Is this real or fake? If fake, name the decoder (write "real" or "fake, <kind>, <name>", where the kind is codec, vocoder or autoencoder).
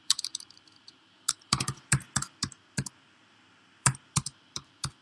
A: fake, vocoder, BigVGAN v2